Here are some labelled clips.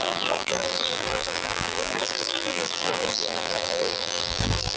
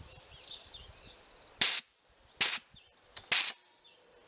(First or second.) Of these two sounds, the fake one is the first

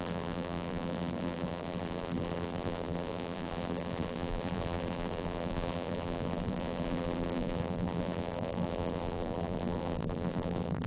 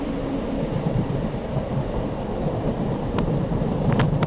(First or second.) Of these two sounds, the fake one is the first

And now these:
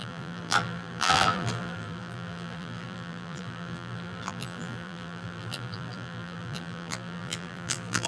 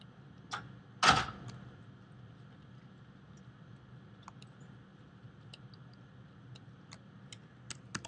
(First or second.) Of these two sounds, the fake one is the first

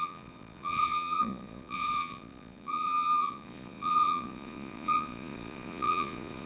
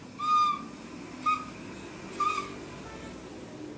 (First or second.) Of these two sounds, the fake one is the first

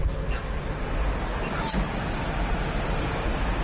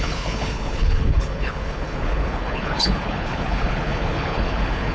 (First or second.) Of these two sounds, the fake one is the second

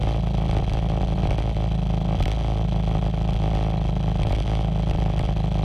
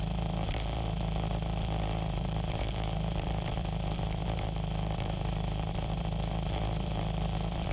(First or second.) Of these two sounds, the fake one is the second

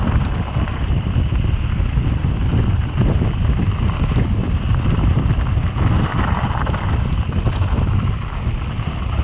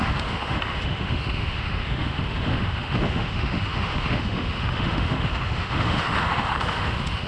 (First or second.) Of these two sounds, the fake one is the second